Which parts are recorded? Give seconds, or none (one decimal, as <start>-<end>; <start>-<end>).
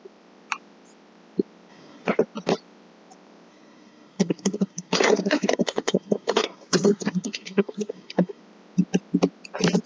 0.0-1.7; 2.2-3.5; 8.4-9.9